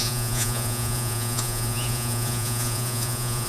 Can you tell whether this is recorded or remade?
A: remade